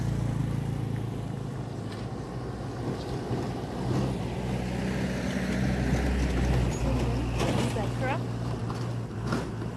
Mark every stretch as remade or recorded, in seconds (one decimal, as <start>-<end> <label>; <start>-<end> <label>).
0.0-9.8 recorded